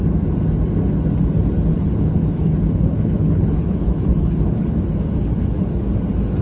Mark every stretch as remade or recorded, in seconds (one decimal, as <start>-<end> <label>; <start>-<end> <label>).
0.0-1.7 recorded; 1.7-4.7 remade; 4.7-5.2 recorded; 5.2-5.8 remade; 5.8-6.4 recorded